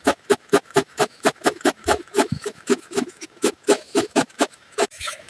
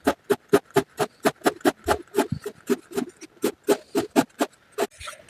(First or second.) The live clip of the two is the second